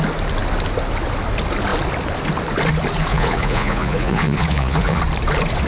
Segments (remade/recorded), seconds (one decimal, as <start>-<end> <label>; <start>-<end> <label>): 0.0-3.1 recorded; 3.1-5.0 remade; 5.0-5.7 recorded